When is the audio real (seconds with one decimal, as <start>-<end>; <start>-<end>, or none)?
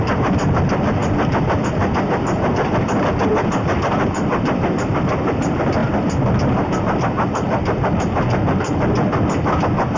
0.0-10.0